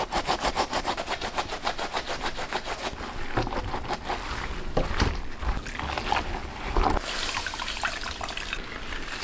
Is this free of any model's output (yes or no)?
yes